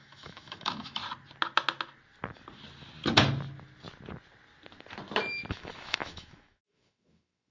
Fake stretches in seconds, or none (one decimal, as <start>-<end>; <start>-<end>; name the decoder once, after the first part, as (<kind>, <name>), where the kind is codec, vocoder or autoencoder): 0.0-1.0 (autoencoder, DAC-VAE); 5.5-7.5